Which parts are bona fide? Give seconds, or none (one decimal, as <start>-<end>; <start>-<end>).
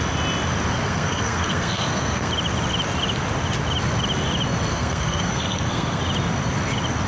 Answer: 0.0-0.7; 2.3-4.7; 6.0-7.1